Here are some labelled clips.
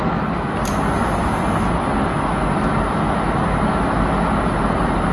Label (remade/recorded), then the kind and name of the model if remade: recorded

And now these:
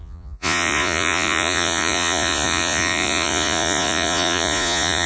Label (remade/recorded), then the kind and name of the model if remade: remade, vocoder, Vocos